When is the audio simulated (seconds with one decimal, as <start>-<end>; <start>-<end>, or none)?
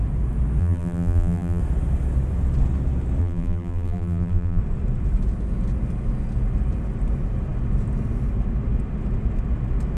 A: 0.6-1.6; 3.2-4.6